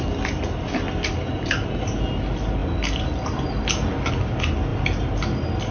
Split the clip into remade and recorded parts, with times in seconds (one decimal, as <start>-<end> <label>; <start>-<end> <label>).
0.0-5.7 recorded